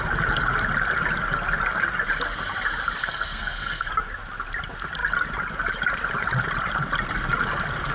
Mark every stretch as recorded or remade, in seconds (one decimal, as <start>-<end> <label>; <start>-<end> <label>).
0.0-3.0 recorded; 3.0-3.9 remade; 3.9-7.9 recorded